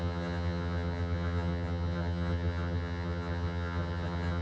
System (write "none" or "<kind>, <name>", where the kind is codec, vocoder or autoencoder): vocoder, HiFi-GAN